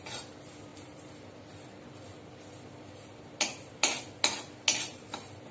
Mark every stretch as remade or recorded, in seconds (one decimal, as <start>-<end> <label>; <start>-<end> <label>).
0.0-5.5 recorded